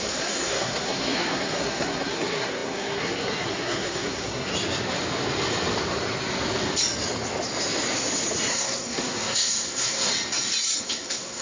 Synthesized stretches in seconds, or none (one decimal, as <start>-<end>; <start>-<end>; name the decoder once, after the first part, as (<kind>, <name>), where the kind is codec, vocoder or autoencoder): 0.0-4.5 (codec, SNAC); 8.5-10.1; 10.8-11.4